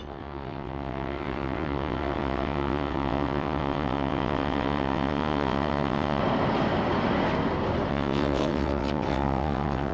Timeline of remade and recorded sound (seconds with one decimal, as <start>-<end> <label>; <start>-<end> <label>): 0.0-6.2 remade; 6.2-7.9 recorded; 7.9-9.9 remade